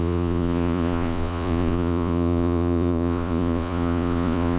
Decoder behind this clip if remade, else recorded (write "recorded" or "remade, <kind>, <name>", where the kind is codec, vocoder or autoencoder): remade, vocoder, Vocos